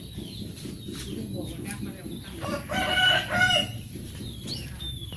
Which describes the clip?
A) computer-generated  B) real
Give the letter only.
B